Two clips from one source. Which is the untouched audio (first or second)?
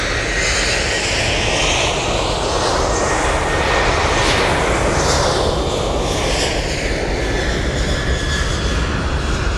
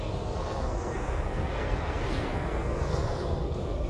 first